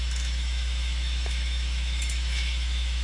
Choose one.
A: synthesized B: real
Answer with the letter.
A